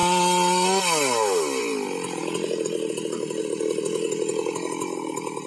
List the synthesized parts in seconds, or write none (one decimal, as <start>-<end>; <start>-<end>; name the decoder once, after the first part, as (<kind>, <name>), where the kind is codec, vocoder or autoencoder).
none